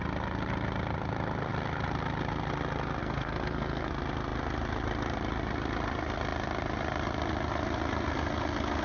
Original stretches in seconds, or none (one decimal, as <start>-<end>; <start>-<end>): 0.0-3.0; 3.9-8.8